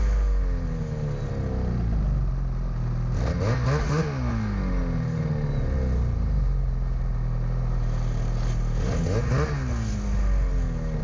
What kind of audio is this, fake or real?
real